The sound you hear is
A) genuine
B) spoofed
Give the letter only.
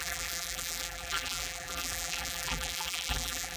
B